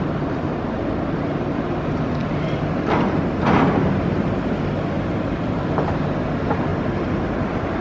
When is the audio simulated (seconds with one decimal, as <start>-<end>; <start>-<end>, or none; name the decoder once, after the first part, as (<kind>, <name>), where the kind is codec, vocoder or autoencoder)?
2.2-3.3 (vocoder, BigVGAN v2); 6.7-7.8